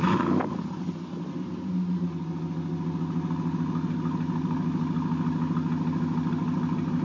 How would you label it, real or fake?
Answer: real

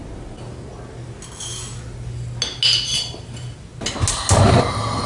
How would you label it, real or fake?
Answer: real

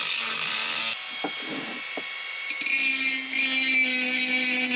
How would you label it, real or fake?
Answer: real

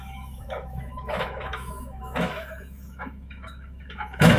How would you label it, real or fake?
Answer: fake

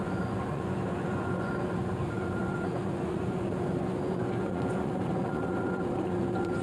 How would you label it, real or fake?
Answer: fake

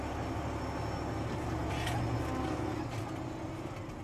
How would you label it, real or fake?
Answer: real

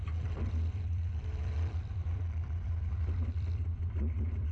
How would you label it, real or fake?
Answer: fake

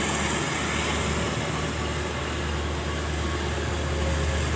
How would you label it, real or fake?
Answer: real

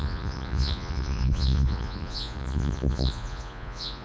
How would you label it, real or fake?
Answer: fake